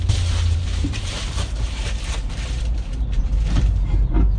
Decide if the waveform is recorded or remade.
remade